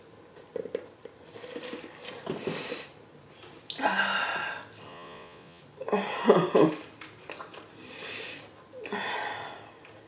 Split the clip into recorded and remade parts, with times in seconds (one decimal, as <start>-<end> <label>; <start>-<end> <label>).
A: 0.0-4.9 recorded; 4.9-5.6 remade; 5.6-10.1 recorded